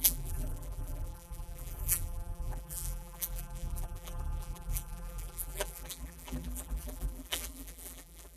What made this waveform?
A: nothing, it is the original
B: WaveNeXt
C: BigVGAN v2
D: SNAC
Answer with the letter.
C